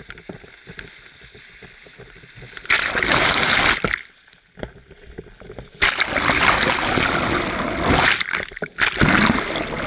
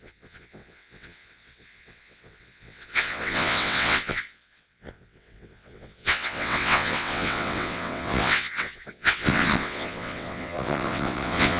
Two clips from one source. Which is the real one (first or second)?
first